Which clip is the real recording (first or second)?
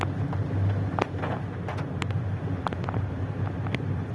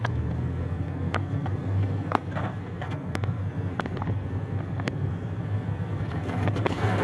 first